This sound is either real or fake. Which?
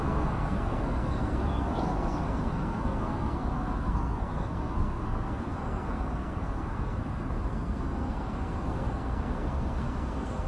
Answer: fake